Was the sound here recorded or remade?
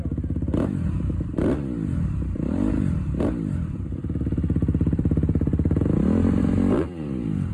remade